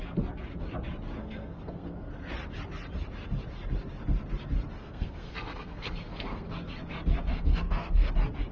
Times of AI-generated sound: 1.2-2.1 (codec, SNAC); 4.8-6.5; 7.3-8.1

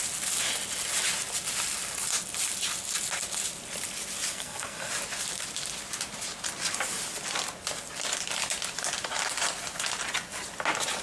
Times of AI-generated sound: 4.3-4.9 (codec, SNAC)

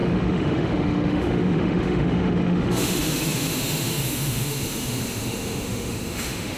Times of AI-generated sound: 0.0-6.6 (autoencoder, DAC-VAE)

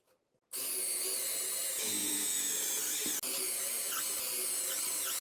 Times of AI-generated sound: 2.0-2.5 (vocoder, Vocos)

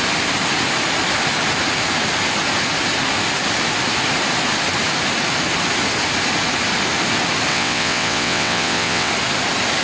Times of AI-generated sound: 7.5-9.1 (vocoder, WaveNeXt)